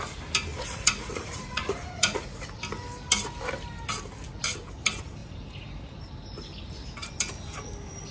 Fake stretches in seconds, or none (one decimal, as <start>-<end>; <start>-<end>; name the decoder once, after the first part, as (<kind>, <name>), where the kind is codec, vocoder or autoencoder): 0.5-2.6 (vocoder, Vocos)